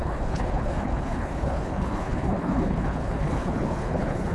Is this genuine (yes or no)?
no